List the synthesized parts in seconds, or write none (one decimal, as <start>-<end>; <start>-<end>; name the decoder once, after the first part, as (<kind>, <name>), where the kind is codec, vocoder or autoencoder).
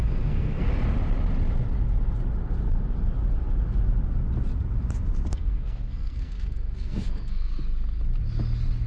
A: 0.0-0.7 (codec, SNAC); 5.3-7.5